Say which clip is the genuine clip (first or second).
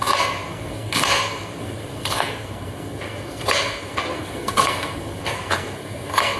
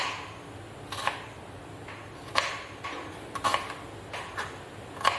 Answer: second